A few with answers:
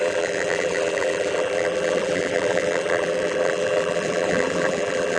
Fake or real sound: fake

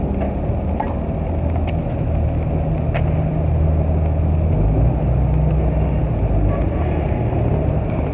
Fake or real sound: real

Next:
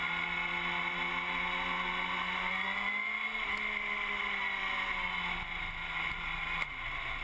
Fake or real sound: real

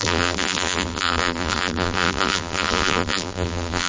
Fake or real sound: fake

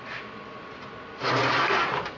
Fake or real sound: real